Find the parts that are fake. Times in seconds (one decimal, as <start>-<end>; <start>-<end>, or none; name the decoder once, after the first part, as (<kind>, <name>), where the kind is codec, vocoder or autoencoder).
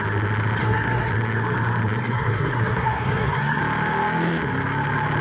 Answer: 0.6-1.1 (codec, SNAC); 2.0-3.6